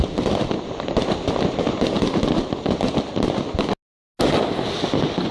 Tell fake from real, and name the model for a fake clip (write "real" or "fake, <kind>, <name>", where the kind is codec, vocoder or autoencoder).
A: real